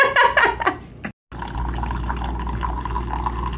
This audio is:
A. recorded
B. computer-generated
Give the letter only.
A